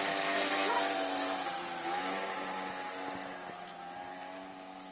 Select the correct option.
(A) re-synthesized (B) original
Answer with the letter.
B